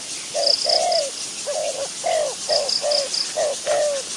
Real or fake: real